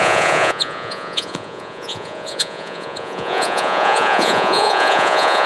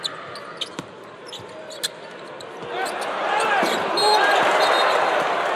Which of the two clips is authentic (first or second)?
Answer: second